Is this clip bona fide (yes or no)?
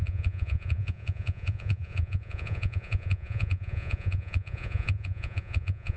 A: no